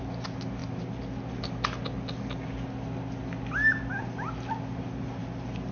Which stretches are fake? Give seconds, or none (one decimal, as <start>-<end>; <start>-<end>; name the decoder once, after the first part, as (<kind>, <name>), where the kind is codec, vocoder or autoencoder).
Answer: none